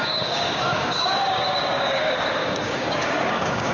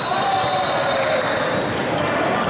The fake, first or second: first